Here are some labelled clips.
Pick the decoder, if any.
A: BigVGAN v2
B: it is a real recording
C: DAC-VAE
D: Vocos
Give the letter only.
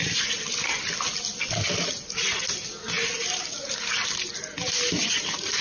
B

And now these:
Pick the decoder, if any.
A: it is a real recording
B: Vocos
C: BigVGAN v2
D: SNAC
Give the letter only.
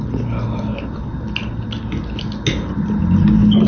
A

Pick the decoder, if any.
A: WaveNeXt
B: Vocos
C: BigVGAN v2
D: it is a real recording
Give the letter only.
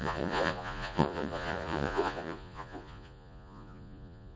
B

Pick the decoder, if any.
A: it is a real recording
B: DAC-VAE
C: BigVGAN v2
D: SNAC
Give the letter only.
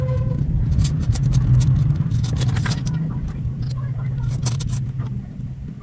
A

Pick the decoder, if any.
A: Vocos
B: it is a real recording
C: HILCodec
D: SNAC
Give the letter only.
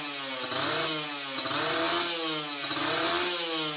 B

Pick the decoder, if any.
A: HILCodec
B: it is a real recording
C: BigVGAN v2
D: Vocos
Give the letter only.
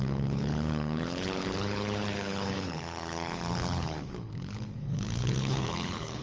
A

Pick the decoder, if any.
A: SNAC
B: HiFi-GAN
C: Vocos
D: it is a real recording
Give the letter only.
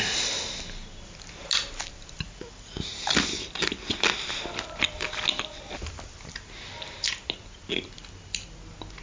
D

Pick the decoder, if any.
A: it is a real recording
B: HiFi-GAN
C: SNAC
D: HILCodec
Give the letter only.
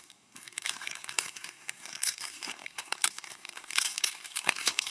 C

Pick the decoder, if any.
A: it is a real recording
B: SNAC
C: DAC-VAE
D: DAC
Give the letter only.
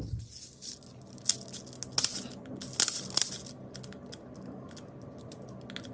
A